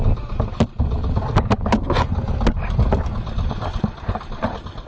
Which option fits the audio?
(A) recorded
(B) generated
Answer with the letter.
A